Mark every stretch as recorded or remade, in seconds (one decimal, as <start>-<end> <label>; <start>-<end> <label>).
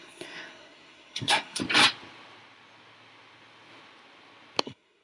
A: 0.0-1.6 remade; 1.6-4.6 recorded; 4.6-5.0 remade